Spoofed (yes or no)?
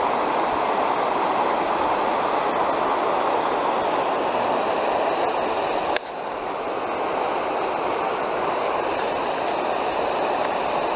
no